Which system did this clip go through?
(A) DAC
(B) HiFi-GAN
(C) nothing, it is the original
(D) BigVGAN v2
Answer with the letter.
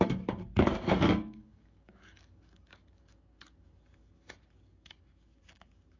A